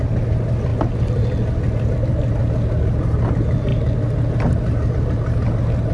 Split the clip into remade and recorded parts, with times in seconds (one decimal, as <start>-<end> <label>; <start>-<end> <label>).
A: 0.0-5.9 recorded